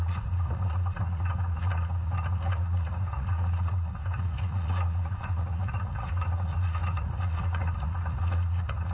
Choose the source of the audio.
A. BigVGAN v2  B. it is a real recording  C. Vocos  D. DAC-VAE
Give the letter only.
C